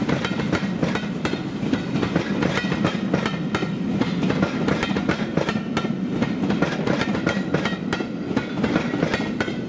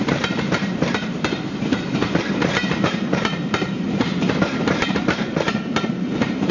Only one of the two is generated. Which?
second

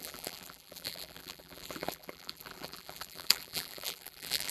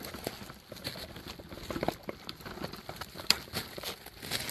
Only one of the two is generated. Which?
first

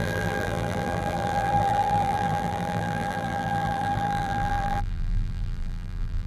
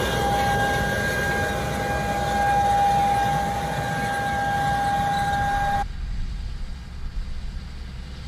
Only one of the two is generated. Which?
first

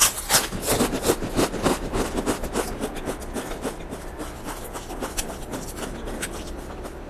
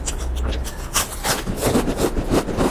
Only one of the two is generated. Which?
second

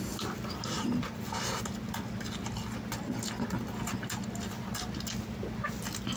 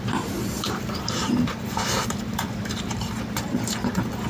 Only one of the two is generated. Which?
second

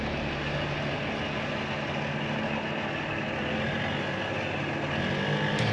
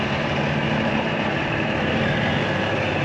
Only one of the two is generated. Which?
second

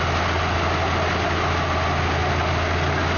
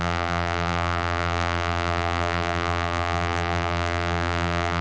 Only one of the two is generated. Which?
second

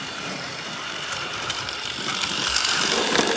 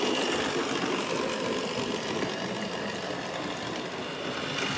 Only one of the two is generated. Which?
first